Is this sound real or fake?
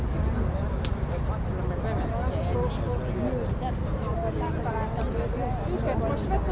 real